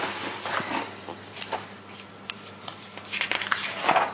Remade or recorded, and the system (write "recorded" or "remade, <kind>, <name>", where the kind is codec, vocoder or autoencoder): remade, vocoder, BigVGAN v2